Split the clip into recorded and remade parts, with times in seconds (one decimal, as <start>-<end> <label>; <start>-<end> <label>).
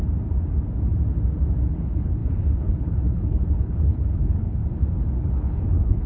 0.0-1.6 recorded; 1.6-4.6 remade; 4.6-5.2 recorded; 5.2-6.1 remade